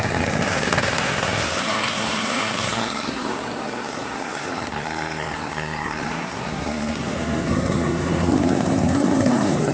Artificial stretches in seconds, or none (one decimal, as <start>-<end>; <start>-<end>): 0.0-9.7